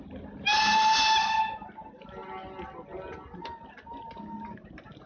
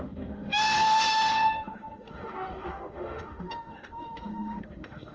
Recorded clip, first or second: first